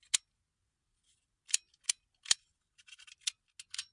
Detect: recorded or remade recorded